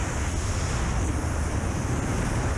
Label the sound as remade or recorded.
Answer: recorded